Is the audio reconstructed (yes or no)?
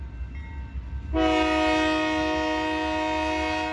no